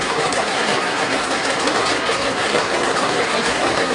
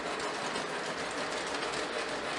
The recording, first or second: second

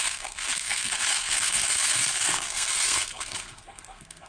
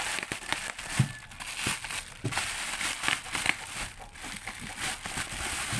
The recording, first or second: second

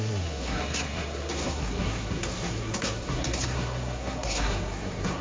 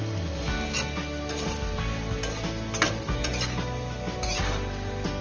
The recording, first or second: second